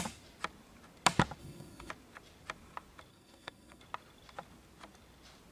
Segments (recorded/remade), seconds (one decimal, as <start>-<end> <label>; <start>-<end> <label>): 0.0-1.4 recorded; 1.4-1.9 remade; 1.9-3.1 recorded; 3.1-3.8 remade; 3.8-5.5 recorded